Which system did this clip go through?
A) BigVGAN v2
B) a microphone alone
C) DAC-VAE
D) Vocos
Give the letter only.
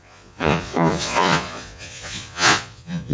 D